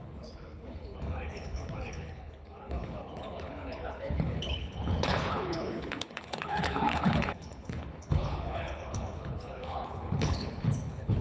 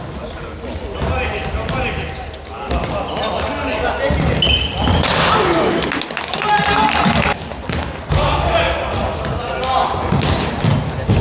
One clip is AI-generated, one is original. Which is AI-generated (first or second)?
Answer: first